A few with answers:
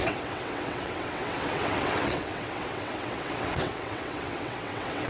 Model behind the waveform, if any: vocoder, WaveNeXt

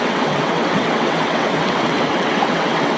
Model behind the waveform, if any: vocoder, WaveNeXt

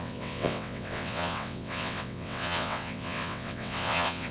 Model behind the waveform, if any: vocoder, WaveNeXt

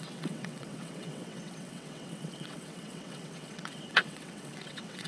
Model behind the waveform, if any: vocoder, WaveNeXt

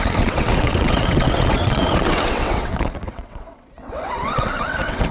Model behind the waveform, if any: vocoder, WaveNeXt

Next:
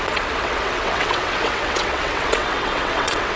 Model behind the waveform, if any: vocoder, WaveNeXt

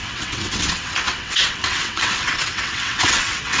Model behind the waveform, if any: vocoder, WaveNeXt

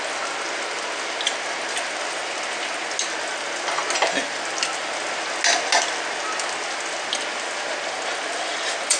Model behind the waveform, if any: none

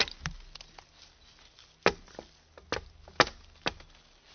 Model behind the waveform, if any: none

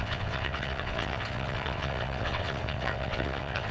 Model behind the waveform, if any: vocoder, WaveNeXt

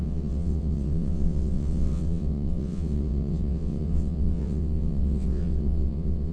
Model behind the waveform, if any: vocoder, WaveNeXt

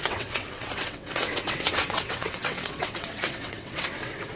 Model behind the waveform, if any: vocoder, WaveNeXt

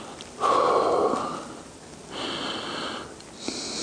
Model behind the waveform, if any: none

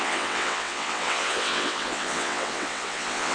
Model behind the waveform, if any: vocoder, WaveNeXt